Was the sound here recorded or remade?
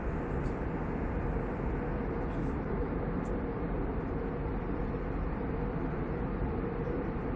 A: recorded